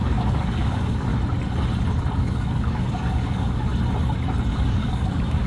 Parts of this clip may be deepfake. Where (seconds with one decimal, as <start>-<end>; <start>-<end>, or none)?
0.0-1.1; 2.2-3.7; 4.5-5.5